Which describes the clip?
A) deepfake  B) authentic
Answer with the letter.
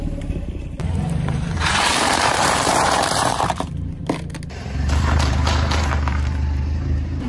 A